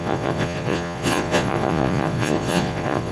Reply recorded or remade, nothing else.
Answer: remade